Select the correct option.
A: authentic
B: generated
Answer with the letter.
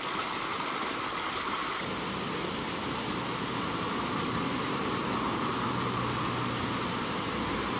A